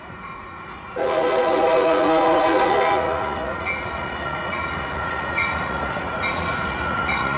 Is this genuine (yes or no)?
no